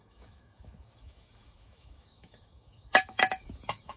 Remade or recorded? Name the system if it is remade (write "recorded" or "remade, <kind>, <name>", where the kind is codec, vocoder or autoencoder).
remade, autoencoder, DAC-VAE